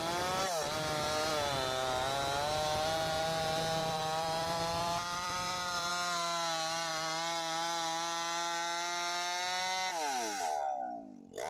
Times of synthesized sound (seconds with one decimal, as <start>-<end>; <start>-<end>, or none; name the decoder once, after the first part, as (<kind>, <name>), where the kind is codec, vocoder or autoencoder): 3.8-5.9 (vocoder, BigVGAN v2)